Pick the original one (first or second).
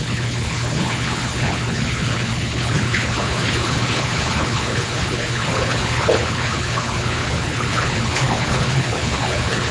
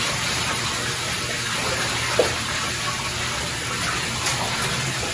second